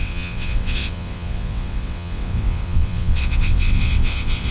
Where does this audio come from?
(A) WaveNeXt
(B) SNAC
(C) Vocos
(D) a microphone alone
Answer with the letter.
A